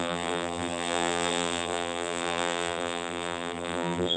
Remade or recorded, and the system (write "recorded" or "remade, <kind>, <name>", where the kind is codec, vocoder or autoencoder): remade, vocoder, BigVGAN v2